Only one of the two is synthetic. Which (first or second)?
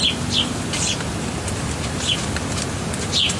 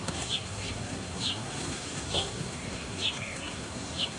second